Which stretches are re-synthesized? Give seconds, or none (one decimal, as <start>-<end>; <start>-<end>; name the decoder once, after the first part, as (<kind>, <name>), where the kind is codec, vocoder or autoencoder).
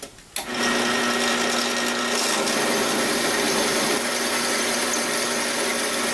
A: none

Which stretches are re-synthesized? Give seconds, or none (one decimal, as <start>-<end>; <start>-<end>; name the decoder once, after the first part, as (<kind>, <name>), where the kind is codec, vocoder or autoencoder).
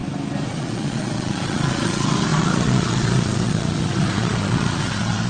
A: 0.5-5.3 (vocoder, Vocos)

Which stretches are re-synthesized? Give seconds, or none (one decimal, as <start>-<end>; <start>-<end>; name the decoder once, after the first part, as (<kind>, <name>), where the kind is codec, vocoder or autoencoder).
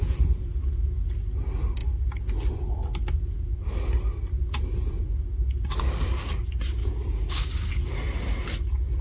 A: 6.8-7.7 (codec, DAC)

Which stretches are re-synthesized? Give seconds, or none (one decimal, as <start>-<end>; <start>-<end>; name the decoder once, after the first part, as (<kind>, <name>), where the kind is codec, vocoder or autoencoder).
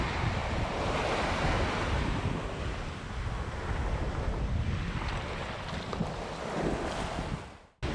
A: none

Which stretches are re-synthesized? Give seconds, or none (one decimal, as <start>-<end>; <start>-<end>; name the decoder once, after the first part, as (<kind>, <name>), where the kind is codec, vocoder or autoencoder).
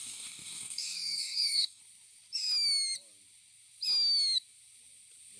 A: 0.0-1.8 (codec, DAC)